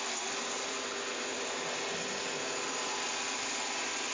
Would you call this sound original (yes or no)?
yes